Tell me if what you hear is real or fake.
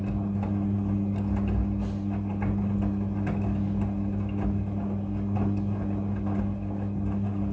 real